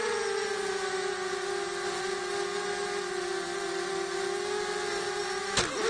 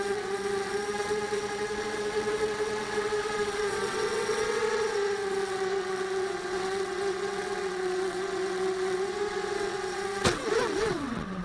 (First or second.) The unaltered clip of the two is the first